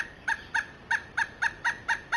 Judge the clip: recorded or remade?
recorded